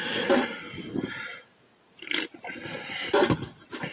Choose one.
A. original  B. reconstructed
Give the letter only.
A